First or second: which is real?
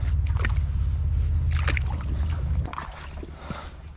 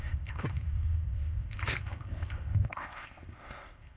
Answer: first